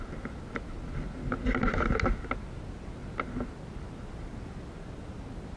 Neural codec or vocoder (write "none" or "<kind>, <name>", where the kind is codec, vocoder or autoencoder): none